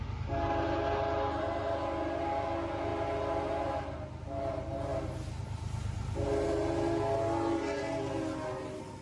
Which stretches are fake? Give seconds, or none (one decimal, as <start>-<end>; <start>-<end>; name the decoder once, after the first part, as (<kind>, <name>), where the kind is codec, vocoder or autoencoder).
none